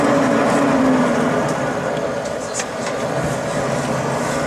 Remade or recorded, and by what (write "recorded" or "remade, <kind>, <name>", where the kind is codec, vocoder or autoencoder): recorded